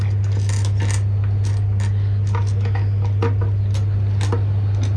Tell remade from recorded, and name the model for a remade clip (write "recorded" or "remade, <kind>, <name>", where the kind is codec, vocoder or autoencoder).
recorded